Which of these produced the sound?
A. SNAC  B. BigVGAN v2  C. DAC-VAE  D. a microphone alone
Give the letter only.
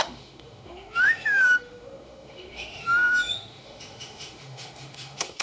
C